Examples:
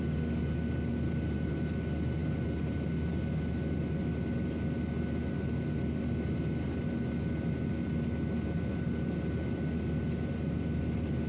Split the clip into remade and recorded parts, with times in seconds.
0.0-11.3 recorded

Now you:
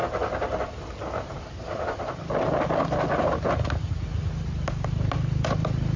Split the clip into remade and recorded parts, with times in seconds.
0.0-6.0 recorded